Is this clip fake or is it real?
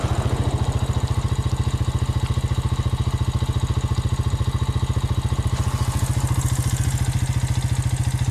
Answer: real